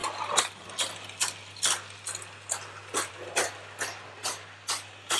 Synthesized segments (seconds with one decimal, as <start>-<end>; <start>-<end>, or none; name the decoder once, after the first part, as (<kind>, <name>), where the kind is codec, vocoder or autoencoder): none